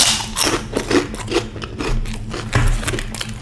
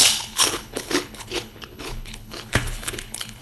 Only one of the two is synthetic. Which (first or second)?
second